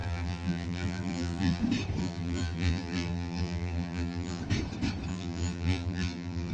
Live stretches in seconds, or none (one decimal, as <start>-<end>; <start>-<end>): 1.6-2.0; 4.4-5.1